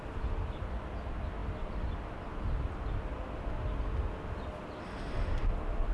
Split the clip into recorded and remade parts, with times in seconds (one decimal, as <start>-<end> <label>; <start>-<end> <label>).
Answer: 0.0-5.9 recorded